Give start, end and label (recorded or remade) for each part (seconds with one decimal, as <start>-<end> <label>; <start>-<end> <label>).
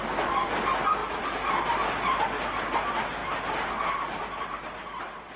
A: 0.0-5.4 recorded